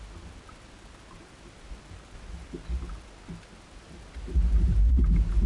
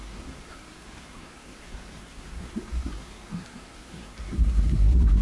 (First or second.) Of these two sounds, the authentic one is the first